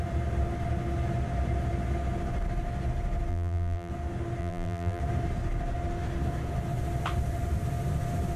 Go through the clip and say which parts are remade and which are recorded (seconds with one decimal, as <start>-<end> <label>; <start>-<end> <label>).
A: 0.0-3.3 recorded; 3.3-3.9 remade; 3.9-4.4 recorded; 4.4-5.0 remade; 5.0-8.4 recorded

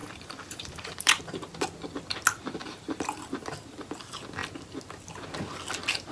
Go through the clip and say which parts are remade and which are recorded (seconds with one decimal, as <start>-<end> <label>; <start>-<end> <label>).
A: 0.0-1.2 remade; 1.2-2.6 recorded; 2.6-3.3 remade; 3.3-6.1 recorded